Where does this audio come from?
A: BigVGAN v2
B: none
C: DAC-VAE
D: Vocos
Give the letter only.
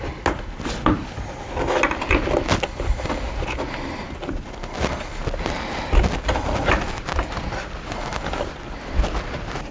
B